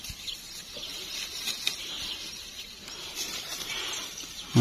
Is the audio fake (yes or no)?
no